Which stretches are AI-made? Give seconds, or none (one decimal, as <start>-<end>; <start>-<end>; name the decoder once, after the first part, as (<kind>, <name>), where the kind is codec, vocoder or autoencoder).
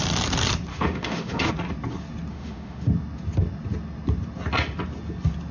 0.7-1.5 (autoencoder, DAC-VAE); 2.3-2.9